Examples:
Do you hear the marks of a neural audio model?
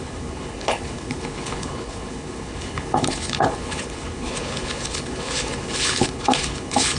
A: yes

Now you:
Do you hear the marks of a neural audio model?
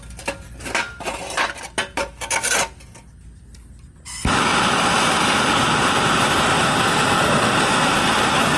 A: no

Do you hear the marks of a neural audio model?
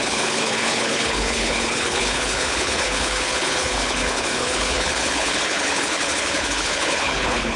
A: yes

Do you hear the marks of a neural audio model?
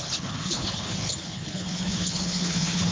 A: yes